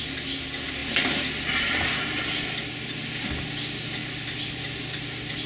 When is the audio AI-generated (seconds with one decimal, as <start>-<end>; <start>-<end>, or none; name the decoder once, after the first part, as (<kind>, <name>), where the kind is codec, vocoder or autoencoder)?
none